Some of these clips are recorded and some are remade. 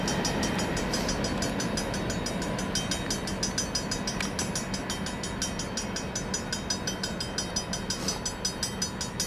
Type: recorded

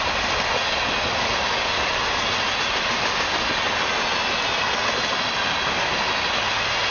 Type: recorded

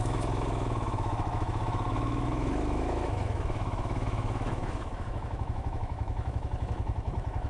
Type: remade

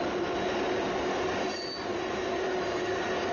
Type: recorded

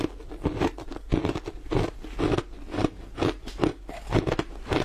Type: remade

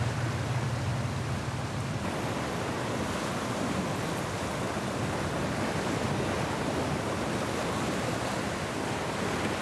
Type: recorded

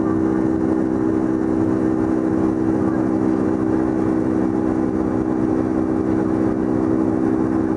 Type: recorded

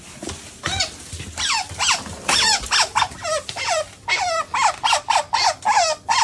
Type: recorded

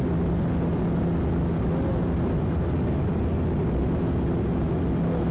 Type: recorded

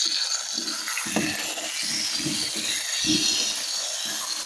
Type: recorded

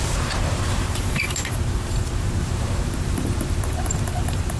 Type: remade